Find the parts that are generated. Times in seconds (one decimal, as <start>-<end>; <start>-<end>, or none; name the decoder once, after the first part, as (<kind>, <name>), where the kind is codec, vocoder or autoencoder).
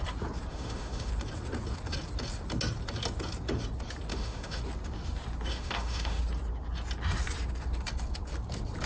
0.5-1.1 (autoencoder, DAC-VAE); 4.1-4.6; 5.5-6.2